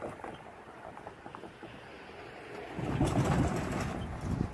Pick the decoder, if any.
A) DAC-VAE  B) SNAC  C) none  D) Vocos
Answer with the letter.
C